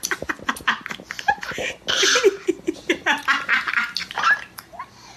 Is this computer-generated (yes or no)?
no